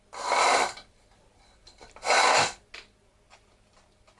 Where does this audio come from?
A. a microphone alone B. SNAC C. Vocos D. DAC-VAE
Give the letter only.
A